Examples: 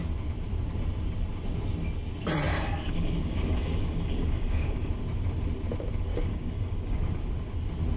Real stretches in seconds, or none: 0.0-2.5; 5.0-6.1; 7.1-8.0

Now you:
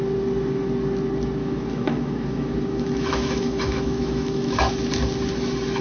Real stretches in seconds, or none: 0.0-1.4; 4.7-5.8

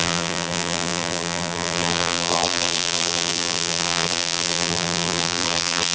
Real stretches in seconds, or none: none

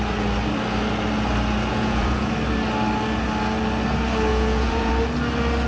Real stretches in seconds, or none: 0.0-1.7; 2.3-4.3; 4.9-5.7

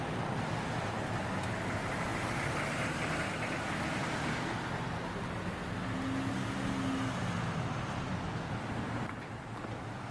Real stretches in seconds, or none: 0.0-10.1

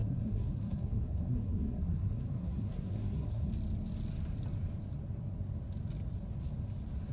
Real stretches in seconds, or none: 3.5-7.1